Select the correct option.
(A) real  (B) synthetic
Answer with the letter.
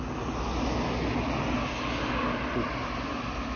A